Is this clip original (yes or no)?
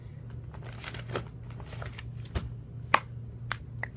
yes